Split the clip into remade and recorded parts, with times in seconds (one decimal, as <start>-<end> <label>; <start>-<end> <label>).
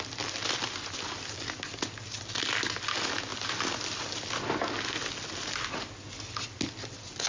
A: 0.0-7.3 recorded